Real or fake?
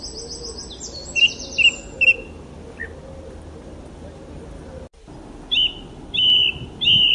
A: real